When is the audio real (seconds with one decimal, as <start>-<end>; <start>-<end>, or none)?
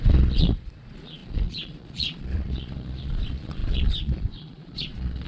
none